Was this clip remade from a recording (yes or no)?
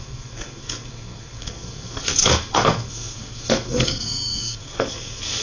yes